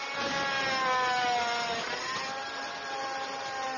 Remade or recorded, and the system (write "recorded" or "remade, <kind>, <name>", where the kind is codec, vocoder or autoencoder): recorded